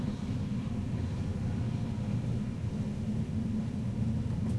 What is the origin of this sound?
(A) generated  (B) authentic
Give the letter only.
B